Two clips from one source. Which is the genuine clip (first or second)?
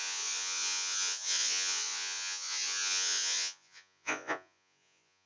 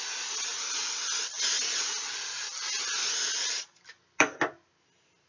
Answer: second